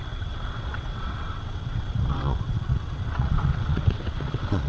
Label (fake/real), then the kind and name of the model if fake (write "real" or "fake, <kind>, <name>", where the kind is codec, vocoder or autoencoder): fake, vocoder, WaveNeXt